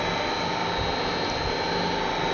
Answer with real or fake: real